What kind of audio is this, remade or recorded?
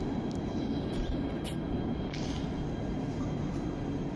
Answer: recorded